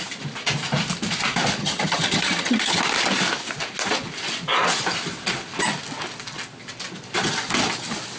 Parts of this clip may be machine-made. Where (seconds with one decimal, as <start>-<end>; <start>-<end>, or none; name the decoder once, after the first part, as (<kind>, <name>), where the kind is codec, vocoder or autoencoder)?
1.6-2.8 (vocoder, HiFi-GAN)